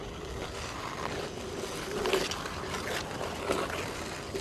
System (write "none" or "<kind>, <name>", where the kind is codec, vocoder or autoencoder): none